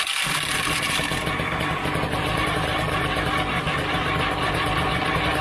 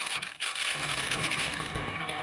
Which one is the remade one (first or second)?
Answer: second